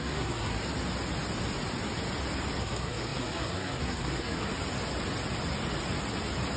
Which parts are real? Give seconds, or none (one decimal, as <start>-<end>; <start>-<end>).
0.6-2.6; 4.5-6.6